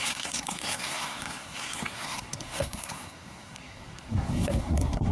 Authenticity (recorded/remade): remade